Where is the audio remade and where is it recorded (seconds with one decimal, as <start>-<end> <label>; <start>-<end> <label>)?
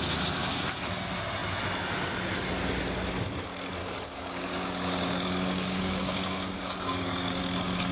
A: 0.0-3.8 recorded; 3.8-7.4 remade; 7.4-7.9 recorded